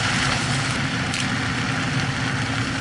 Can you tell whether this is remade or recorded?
recorded